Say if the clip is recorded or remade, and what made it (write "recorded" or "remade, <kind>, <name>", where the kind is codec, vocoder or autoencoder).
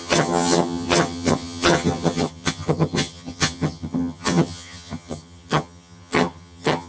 remade, vocoder, HiFi-GAN